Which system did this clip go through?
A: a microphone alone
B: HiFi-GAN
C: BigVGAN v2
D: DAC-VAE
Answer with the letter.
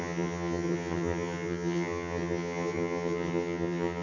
B